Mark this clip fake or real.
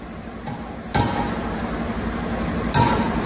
real